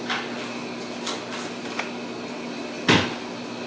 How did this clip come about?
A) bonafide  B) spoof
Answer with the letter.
A